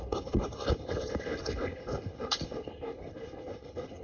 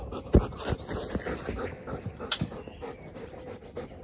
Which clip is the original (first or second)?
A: second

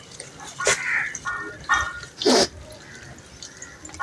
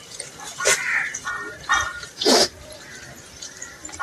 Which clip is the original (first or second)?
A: first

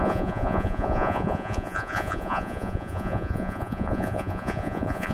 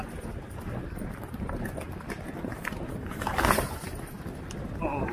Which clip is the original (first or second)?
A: second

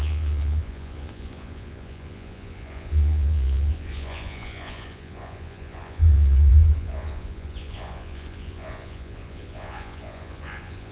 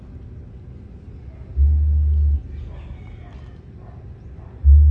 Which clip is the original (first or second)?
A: second